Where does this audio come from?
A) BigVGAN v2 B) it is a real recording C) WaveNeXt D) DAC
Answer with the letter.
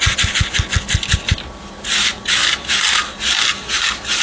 B